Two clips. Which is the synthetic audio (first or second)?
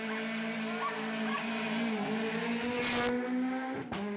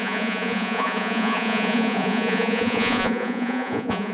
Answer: second